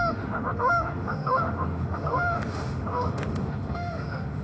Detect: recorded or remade remade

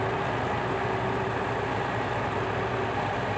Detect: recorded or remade recorded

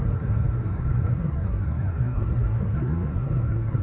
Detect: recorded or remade remade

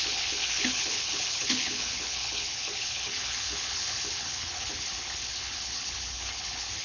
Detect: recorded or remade remade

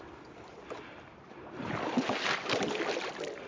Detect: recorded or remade recorded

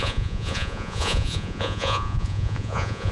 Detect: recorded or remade remade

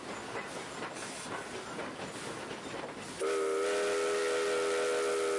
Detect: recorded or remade recorded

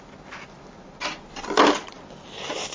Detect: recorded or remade recorded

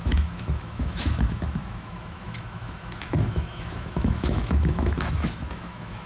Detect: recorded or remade remade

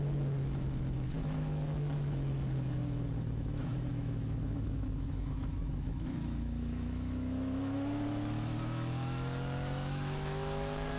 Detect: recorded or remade remade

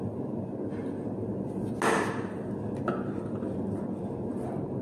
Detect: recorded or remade recorded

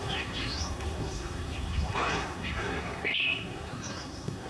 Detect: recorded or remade remade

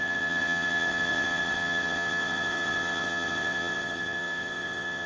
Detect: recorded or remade remade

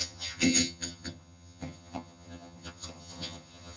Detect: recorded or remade remade